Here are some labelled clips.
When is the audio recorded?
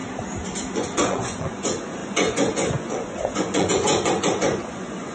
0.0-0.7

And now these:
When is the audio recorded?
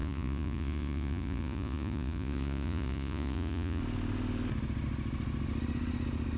3.8-6.4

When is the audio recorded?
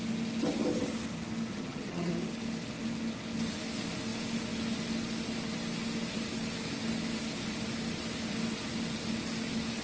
0.0-1.5; 2.1-9.8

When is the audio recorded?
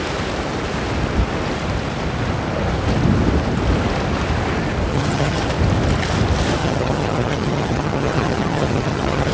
0.0-4.9; 5.4-6.6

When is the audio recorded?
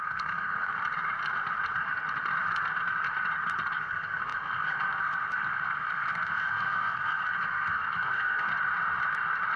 0.8-3.8; 8.5-9.6